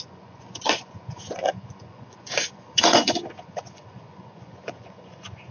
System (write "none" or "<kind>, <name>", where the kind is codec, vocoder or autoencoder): vocoder, Vocos